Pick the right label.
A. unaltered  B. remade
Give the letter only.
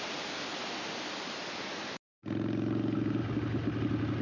A